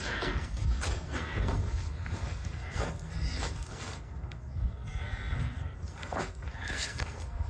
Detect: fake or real fake